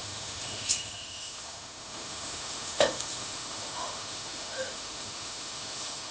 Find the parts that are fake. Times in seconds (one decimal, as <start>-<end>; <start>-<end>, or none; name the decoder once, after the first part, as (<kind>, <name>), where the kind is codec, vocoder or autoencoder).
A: 0.0-6.1 (autoencoder, DAC-VAE)